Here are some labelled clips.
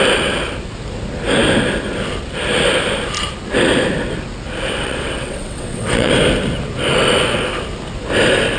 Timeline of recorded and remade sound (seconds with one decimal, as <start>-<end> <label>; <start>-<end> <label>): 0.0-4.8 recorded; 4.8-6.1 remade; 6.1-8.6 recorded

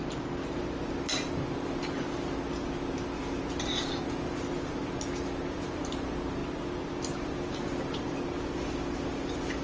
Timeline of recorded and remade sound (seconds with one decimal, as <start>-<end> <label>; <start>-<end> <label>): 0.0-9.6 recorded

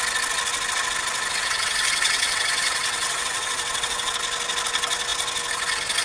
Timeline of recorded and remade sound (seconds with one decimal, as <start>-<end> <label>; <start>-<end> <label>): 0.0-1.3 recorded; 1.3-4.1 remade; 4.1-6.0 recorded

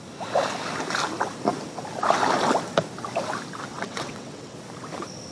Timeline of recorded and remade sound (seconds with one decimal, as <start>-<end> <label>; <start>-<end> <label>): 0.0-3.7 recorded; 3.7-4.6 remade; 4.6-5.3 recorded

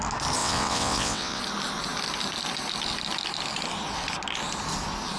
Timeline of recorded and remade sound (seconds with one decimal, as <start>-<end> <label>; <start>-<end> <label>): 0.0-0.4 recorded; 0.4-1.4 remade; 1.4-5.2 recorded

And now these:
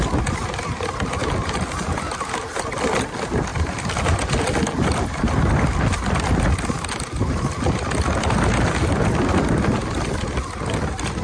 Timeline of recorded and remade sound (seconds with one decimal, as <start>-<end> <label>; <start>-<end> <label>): 0.0-11.2 recorded

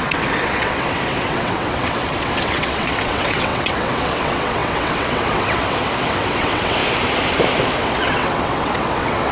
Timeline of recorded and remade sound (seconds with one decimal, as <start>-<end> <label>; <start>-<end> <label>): 0.0-6.8 remade; 6.8-7.8 recorded; 7.8-9.3 remade

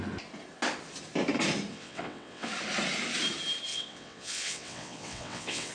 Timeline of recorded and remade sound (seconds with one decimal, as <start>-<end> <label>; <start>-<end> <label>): 0.0-1.7 recorded; 1.7-2.5 remade; 2.5-3.7 recorded; 3.7-5.7 remade